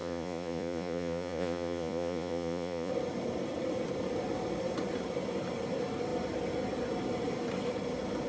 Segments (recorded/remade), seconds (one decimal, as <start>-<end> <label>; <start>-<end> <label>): 0.0-2.9 remade; 2.9-8.3 recorded